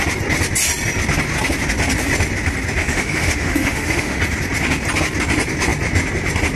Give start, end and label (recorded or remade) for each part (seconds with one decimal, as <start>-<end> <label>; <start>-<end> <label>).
0.0-2.8 recorded; 2.8-4.2 remade; 4.2-6.6 recorded